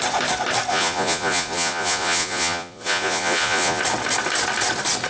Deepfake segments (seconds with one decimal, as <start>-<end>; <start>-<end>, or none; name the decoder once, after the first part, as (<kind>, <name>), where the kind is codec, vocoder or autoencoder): 0.7-3.8 (vocoder, Vocos)